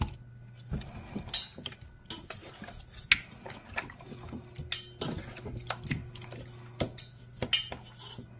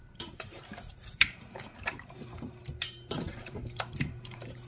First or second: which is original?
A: first